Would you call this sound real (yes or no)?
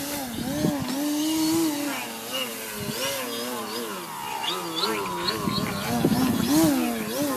yes